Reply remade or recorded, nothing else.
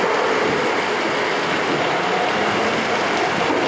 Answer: recorded